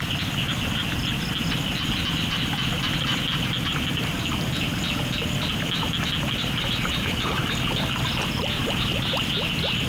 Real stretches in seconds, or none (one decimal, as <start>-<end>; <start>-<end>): 0.0-9.9